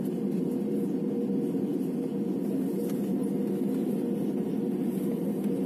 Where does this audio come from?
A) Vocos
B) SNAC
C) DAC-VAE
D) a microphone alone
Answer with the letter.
D